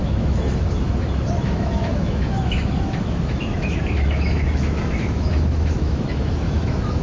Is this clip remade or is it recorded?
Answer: remade